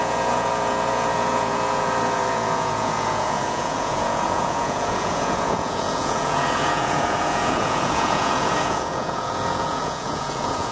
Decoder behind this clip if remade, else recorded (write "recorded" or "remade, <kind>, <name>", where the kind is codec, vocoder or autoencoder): remade, vocoder, Vocos